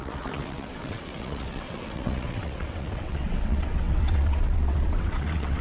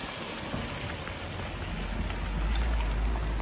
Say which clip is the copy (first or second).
first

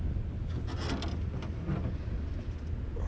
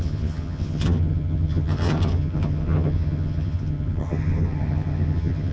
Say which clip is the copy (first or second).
second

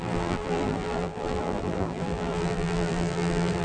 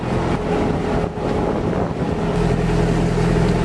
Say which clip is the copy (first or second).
first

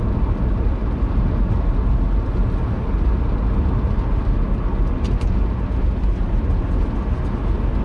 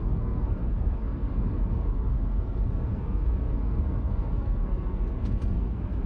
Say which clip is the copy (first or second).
second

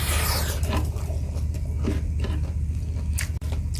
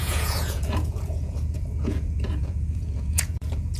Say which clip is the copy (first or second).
second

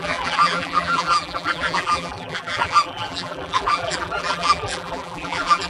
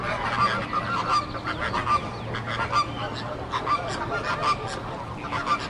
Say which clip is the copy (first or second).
first